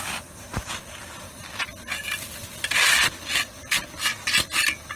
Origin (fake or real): real